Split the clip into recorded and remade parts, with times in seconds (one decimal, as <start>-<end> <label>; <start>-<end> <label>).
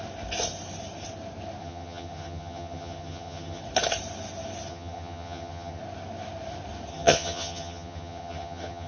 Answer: 0.0-1.6 recorded; 1.6-3.6 remade; 3.6-4.7 recorded; 4.7-5.8 remade; 5.8-6.9 recorded; 6.9-8.9 remade